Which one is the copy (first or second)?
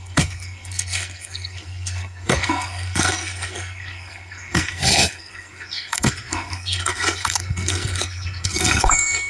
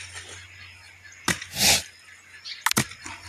first